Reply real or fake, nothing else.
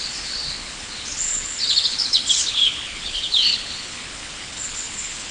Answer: fake